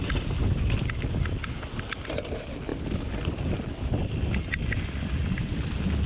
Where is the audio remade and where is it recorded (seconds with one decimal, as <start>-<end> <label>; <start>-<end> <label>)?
0.0-6.1 recorded